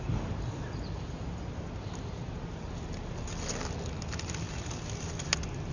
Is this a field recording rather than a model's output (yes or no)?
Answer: yes